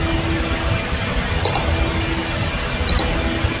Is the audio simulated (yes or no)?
no